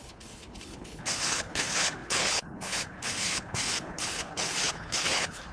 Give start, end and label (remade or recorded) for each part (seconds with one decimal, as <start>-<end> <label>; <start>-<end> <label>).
0.0-5.5 remade